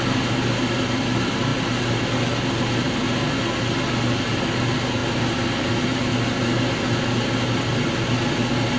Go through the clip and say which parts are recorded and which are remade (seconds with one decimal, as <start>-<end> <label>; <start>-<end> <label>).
0.0-8.8 recorded